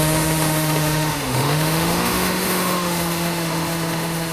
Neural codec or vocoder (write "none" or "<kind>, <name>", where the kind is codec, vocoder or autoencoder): autoencoder, DAC-VAE